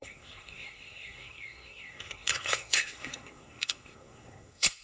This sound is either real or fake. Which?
fake